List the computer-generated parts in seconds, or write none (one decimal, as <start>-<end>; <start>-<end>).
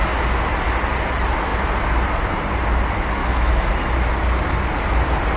3.2-3.7